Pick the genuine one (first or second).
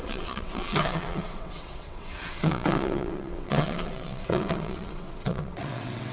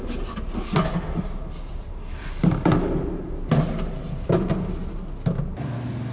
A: second